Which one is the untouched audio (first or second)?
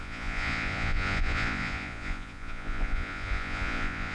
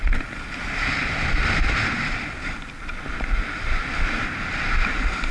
second